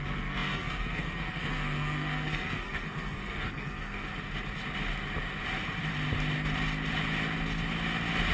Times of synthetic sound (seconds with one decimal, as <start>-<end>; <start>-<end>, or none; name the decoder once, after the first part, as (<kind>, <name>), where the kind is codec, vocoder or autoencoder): 0.0-4.1 (codec, SNAC)